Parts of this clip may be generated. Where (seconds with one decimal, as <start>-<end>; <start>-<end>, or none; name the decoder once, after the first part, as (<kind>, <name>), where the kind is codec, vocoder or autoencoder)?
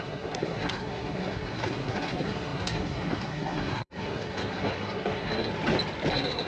0.0-5.5 (codec, SNAC); 6.1-6.5